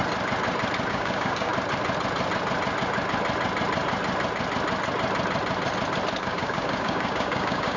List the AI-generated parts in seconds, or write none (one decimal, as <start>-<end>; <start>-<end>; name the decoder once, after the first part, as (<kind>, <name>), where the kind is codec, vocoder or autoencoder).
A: 0.9-1.5 (codec, DAC); 6.2-7.8